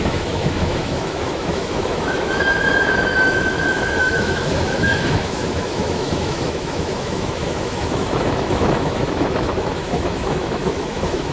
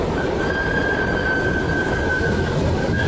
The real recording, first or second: second